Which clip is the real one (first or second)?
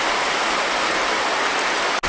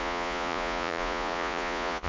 first